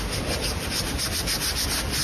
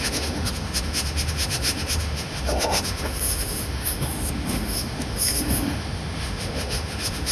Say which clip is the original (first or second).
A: first